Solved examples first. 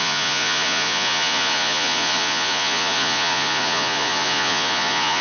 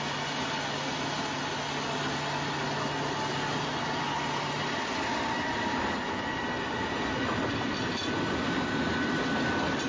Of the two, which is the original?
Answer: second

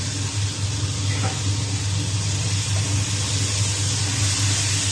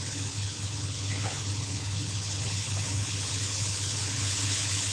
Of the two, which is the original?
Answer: first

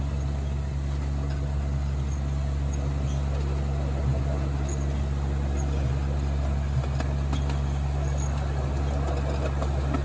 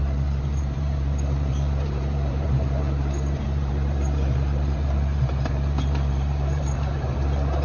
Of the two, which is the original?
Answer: first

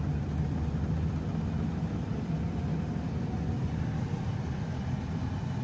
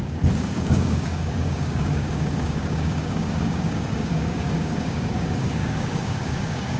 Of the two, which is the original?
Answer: first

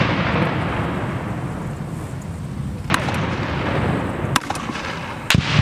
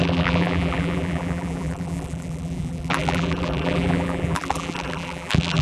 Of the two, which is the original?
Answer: first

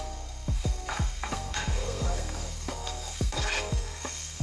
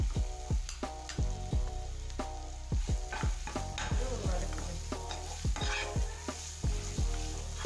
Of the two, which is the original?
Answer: second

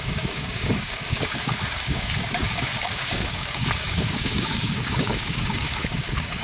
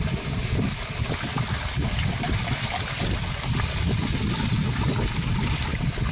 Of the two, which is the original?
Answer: second